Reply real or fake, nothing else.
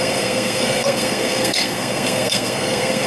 fake